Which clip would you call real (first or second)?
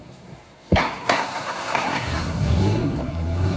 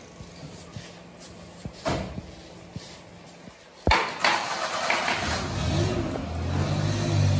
second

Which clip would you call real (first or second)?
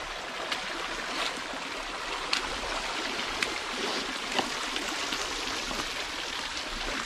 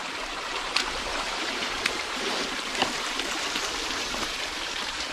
first